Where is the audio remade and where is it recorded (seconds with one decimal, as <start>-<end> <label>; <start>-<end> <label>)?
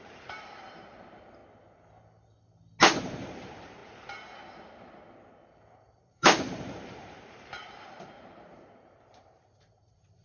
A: 0.0-1.4 remade; 1.4-3.0 recorded; 3.0-3.8 remade; 3.8-5.8 recorded; 5.8-10.2 remade